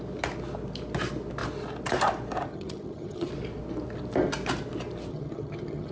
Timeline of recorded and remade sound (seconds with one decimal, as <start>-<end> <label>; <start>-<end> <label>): 0.0-2.5 recorded; 2.5-3.3 remade; 3.3-5.1 recorded; 5.1-5.9 remade